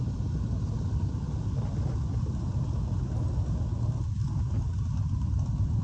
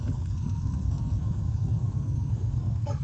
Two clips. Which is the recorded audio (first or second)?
first